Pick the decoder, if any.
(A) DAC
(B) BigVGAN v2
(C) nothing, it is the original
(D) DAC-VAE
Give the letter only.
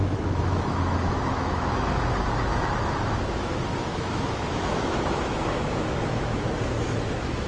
D